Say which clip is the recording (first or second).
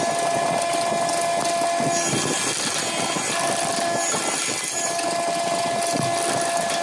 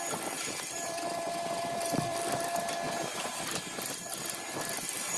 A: first